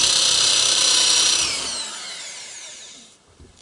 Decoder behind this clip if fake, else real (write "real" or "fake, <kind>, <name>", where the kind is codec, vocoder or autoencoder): fake, vocoder, BigVGAN v2